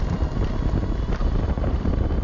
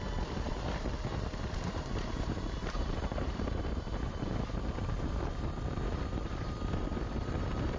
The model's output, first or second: second